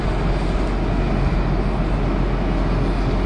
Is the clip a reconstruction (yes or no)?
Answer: no